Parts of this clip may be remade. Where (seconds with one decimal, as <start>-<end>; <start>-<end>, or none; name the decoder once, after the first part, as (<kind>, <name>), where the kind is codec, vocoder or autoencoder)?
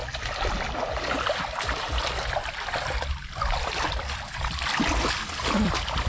5.2-6.1 (vocoder, BigVGAN v2)